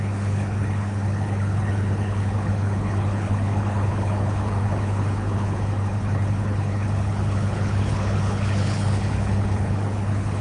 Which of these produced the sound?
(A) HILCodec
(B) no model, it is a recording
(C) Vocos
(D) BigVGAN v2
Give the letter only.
A